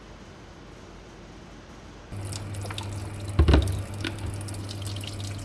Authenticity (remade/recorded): recorded